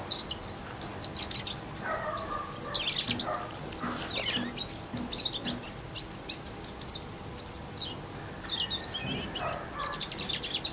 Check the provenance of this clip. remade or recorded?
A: recorded